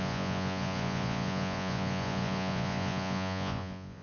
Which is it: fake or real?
fake